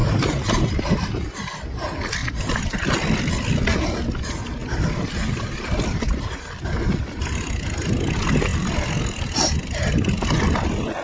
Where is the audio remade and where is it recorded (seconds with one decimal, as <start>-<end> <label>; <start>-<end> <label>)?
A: 0.0-0.6 remade; 0.6-2.2 recorded; 2.2-3.3 remade; 3.3-4.6 recorded; 4.6-6.9 remade; 6.9-11.0 recorded